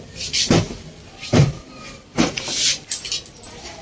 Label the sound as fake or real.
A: real